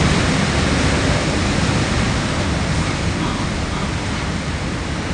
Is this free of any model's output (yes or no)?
yes